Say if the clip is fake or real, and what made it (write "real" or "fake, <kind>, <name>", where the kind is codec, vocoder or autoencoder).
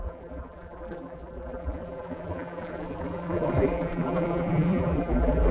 fake, vocoder, BigVGAN v2